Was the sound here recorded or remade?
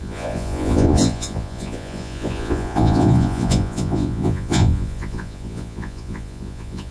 remade